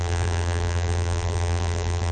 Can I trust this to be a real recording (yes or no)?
no